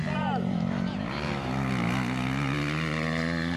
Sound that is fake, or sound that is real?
real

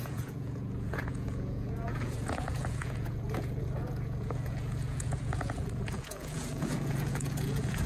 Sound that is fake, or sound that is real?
fake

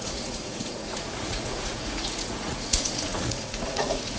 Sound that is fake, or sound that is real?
fake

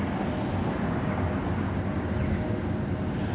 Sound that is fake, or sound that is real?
real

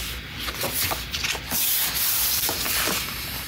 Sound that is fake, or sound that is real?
real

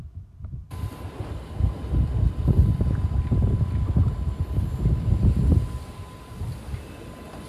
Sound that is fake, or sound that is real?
real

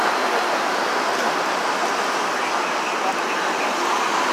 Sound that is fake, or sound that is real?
real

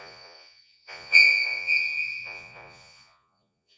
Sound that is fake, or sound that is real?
fake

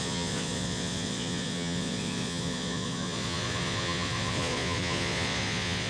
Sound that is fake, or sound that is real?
fake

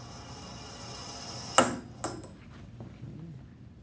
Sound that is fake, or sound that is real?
real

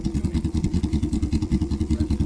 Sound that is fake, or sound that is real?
fake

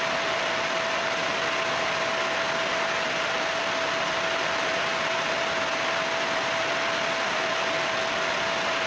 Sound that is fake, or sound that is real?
real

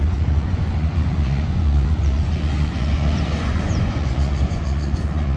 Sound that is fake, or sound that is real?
fake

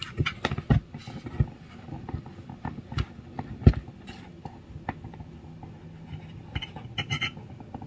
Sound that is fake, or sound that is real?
real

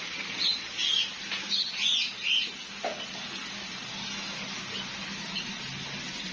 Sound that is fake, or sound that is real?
real